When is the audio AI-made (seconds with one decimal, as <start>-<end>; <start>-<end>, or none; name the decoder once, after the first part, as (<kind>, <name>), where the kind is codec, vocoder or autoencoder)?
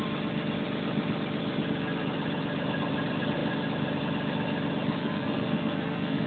5.0-6.3 (codec, SNAC)